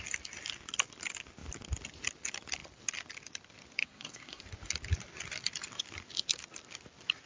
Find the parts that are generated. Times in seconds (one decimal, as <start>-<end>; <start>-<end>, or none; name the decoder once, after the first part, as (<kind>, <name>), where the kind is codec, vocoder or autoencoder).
3.8-4.4 (codec, SNAC)